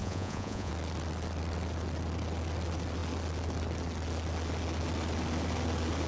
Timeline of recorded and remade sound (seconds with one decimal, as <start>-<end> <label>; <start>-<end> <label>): 0.0-0.7 remade; 0.7-6.1 recorded